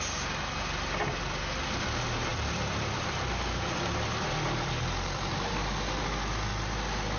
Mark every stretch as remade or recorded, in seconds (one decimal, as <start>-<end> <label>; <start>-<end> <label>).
0.0-2.3 recorded; 2.3-6.0 remade; 6.0-7.2 recorded